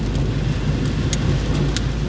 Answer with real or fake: real